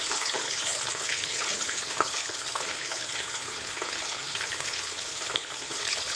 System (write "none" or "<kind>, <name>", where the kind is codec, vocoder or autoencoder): codec, HILCodec